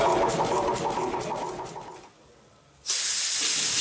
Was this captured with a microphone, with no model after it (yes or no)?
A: yes